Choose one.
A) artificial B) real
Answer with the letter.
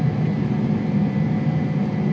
B